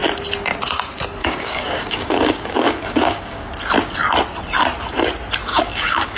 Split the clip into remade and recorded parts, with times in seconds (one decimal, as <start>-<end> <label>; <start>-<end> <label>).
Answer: 0.0-1.2 recorded; 1.2-3.5 remade; 3.5-5.5 recorded; 5.5-6.2 remade